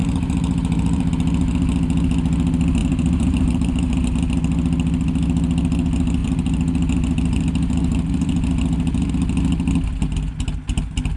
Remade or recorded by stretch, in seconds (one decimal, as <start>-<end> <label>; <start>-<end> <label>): 0.0-1.1 remade; 1.1-2.8 recorded; 2.8-4.1 remade; 4.1-6.2 recorded; 6.2-9.1 remade; 9.1-11.2 recorded